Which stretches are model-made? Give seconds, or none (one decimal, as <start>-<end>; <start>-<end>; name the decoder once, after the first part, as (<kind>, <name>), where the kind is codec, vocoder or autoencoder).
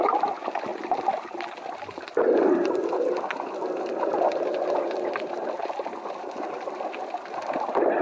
none